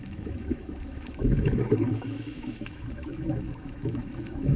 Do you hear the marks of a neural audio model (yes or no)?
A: yes